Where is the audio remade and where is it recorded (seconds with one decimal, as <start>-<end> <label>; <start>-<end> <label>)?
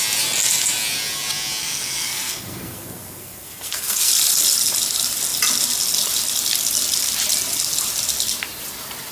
0.0-1.6 recorded; 1.6-4.1 remade; 4.1-9.1 recorded